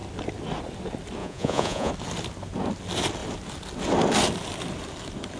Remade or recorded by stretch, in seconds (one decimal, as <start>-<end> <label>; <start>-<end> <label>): 0.0-1.2 recorded; 1.2-1.9 remade; 1.9-5.4 recorded